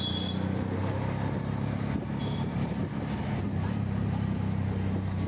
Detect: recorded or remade recorded